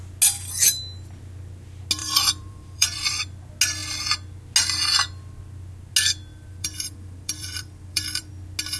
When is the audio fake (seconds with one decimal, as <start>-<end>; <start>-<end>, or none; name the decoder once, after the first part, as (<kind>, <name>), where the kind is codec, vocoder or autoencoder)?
2.0-3.2 (vocoder, BigVGAN v2); 6.3-8.3